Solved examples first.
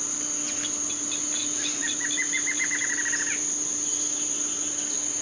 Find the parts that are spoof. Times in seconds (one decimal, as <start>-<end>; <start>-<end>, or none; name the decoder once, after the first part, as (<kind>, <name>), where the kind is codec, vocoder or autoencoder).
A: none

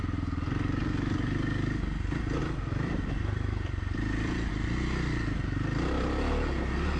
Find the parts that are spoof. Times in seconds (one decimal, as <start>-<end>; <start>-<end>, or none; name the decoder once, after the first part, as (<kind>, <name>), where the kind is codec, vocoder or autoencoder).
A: 2.4-4.5 (vocoder, BigVGAN v2)

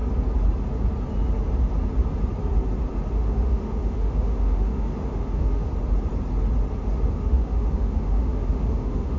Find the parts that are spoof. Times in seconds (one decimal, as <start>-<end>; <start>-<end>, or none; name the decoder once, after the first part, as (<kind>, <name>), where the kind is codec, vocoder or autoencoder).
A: 3.1-5.7 (autoencoder, DAC-VAE); 7.1-9.2

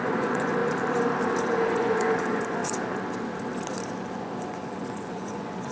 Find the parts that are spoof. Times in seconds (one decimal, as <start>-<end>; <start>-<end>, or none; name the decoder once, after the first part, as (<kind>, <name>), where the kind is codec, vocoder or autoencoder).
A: 0.0-0.6 (vocoder, Vocos); 1.7-2.6; 4.1-5.7